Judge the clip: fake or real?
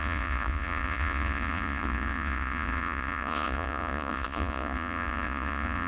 fake